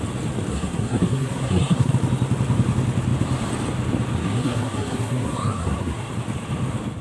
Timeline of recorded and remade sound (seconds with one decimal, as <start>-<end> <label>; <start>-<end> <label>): 0.0-0.5 recorded; 0.5-1.9 remade; 1.9-4.2 recorded; 4.2-6.1 remade; 6.1-7.0 recorded